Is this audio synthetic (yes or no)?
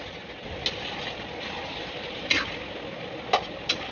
no